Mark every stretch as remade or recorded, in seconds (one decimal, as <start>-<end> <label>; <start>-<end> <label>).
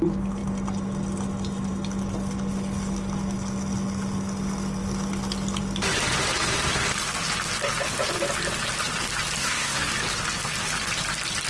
0.0-9.4 recorded; 9.4-9.9 remade; 9.9-11.5 recorded